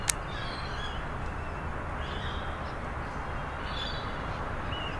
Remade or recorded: recorded